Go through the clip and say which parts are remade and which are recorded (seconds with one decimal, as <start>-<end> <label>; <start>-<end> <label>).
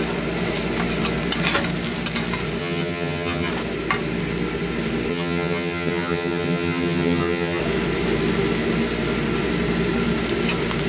0.0-2.6 recorded; 2.6-3.5 remade; 3.5-5.1 recorded; 5.1-7.6 remade; 7.6-10.9 recorded